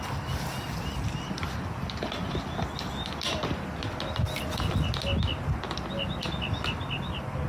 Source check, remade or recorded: recorded